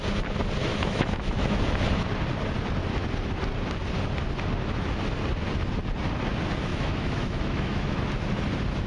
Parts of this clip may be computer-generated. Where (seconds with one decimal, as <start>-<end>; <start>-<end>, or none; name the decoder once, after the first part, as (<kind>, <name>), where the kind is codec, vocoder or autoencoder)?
0.7-1.6 (autoencoder, DAC-VAE); 6.7-8.0